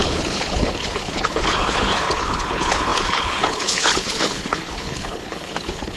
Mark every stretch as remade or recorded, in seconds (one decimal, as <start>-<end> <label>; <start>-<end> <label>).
0.0-6.0 remade